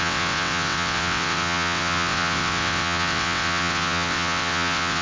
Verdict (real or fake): fake